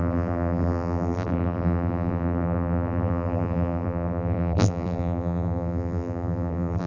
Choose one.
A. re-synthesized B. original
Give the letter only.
A